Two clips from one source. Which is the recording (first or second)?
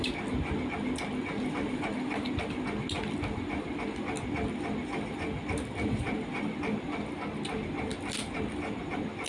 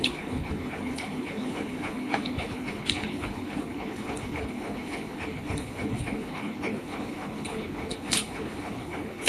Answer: first